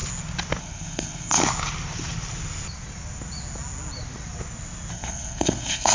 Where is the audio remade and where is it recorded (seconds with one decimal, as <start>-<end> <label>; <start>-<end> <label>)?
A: 0.0-0.6 recorded; 0.6-1.4 remade; 1.4-4.9 recorded; 4.9-5.9 remade